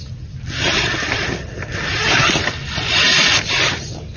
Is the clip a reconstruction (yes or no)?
no